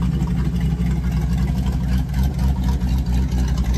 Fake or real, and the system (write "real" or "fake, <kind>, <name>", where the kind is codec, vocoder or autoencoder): real